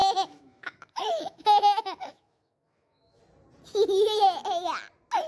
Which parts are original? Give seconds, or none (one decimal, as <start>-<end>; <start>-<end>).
3.2-5.3